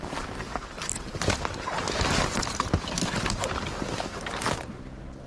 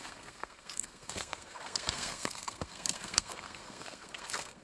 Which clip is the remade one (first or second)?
second